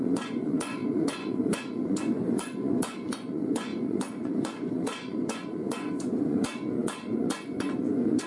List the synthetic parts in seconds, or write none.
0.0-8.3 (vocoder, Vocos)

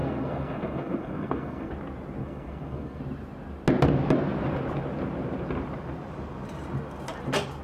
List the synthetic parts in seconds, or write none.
0.0-1.7 (codec, SNAC); 2.2-3.0

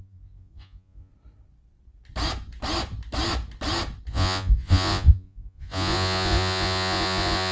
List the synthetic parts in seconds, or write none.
0.0-1.1 (vocoder, Vocos); 4.1-7.5

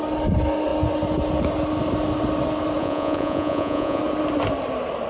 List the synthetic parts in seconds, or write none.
2.8-4.0 (vocoder, Vocos)

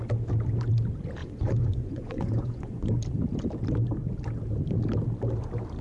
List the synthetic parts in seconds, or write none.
1.2-2.9 (vocoder, Vocos)

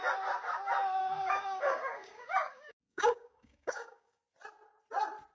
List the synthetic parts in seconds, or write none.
1.0-4.2 (codec, DAC)